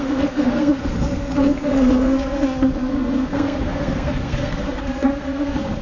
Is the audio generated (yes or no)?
yes